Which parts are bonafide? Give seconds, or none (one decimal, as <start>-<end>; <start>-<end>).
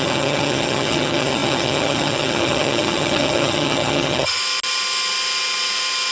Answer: 4.4-6.1